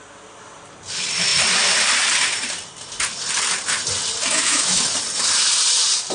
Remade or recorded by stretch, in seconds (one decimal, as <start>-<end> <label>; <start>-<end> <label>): 0.0-4.2 recorded; 4.2-4.9 remade; 4.9-6.1 recorded

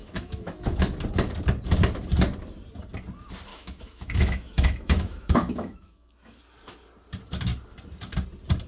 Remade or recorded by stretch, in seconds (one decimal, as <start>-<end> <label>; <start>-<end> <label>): 0.0-0.8 remade; 0.8-3.5 recorded; 3.5-6.4 remade; 6.4-8.7 recorded

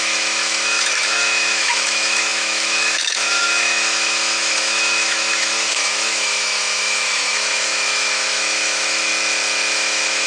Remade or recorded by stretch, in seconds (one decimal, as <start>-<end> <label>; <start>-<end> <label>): 0.0-9.1 remade; 9.1-9.7 recorded; 9.7-10.3 remade

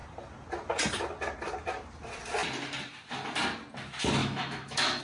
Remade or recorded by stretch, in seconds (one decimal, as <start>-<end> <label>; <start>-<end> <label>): 0.0-4.2 recorded; 4.2-5.0 remade

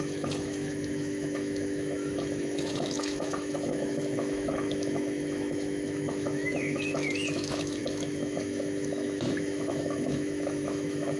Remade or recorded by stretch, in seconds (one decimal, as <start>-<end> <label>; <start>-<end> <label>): 0.0-11.2 remade